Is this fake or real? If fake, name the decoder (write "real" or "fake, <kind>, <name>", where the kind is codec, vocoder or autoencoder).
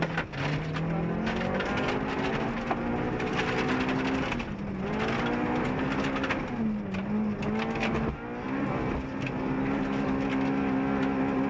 real